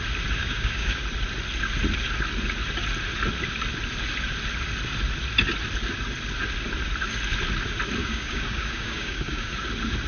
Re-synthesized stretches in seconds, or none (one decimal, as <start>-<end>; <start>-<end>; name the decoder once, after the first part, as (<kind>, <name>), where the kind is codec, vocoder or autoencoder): 0.4-1.0 (codec, DAC); 8.0-9.5